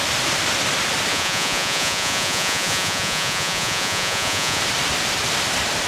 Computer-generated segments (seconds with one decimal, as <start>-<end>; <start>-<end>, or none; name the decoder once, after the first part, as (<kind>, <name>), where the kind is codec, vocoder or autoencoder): 1.1-4.6 (vocoder, Vocos)